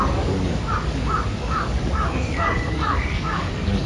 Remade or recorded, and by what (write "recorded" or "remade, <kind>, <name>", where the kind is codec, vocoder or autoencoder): remade, codec, DAC